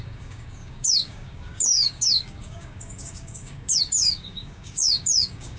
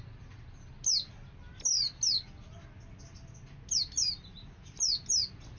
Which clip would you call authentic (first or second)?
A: second